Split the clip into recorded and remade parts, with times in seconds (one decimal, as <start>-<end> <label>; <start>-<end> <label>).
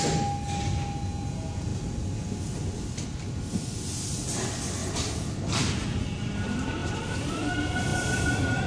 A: 0.0-4.8 recorded; 4.8-5.6 remade; 5.6-6.8 recorded; 6.8-7.5 remade; 7.5-7.9 recorded; 7.9-8.7 remade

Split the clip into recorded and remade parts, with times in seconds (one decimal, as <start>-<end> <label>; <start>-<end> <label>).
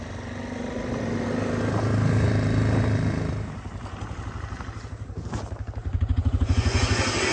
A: 0.0-5.8 recorded; 5.8-6.8 remade; 6.8-7.3 recorded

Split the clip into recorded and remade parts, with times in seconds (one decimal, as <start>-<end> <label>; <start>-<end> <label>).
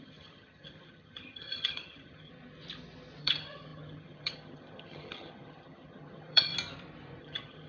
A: 0.0-2.3 remade; 2.3-3.2 recorded; 3.2-6.5 remade; 6.5-7.2 recorded; 7.2-7.7 remade